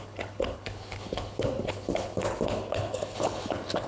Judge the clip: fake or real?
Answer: fake